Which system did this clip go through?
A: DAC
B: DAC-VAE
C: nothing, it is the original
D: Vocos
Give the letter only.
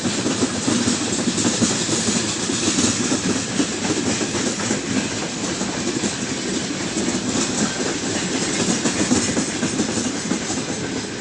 C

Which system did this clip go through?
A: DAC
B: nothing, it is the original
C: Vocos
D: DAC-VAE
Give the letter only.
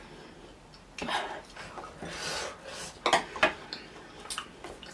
B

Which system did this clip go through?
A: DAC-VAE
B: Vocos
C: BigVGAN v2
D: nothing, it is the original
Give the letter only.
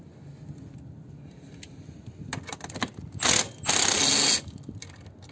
D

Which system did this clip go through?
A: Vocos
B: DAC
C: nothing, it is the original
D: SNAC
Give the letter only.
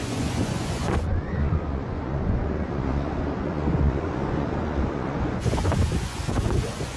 A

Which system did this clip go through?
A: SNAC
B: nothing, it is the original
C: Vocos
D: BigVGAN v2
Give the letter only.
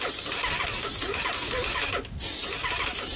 B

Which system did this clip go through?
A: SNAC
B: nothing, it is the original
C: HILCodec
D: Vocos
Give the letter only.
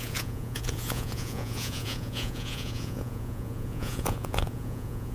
D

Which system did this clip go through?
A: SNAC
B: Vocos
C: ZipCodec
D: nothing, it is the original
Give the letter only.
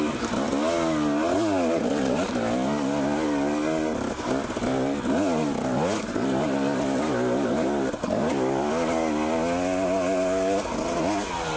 D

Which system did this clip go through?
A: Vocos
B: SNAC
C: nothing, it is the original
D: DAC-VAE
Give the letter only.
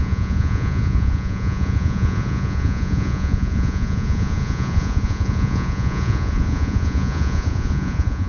A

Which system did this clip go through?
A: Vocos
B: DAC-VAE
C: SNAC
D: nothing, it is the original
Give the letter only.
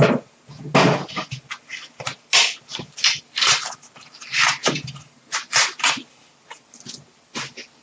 D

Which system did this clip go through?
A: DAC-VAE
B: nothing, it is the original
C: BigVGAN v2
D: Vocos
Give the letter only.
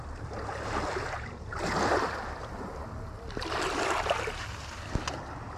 B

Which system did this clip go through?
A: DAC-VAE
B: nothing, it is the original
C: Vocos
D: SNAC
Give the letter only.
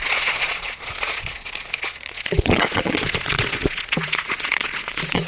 C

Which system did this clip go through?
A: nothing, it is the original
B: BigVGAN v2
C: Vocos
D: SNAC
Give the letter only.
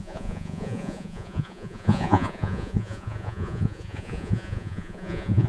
C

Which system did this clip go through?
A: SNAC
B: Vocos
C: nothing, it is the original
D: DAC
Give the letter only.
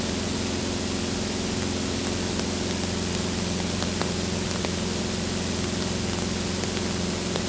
C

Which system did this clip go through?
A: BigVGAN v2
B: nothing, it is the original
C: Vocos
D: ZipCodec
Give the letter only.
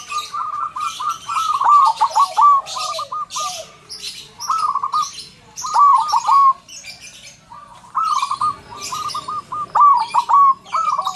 B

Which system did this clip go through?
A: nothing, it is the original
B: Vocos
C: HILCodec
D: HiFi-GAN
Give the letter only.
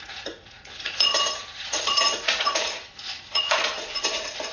B